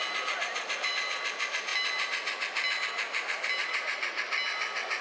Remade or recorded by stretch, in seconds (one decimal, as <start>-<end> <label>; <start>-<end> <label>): 0.0-3.6 recorded; 3.6-4.2 remade; 4.2-5.0 recorded